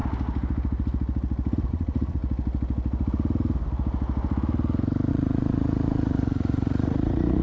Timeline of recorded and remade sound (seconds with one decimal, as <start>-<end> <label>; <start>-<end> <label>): 0.0-1.7 recorded; 1.7-2.2 remade; 2.2-5.1 recorded; 5.1-7.4 remade